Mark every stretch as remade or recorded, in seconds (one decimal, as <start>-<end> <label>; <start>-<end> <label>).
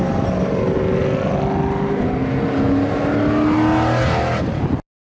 0.0-5.0 recorded